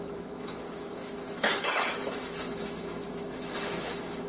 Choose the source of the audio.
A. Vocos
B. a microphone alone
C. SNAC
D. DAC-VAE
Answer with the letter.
D